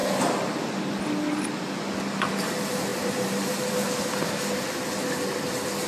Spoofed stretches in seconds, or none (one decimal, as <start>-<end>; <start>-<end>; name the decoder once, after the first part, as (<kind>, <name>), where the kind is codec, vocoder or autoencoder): 2.9-3.5 (vocoder, BigVGAN v2)